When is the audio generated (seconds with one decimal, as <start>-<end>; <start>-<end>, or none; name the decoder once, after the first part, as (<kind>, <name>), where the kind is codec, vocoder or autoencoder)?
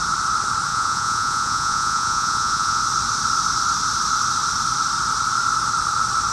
0.7-2.8 (vocoder, Vocos)